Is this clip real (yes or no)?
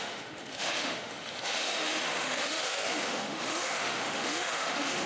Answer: no